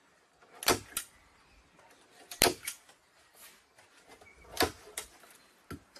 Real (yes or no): yes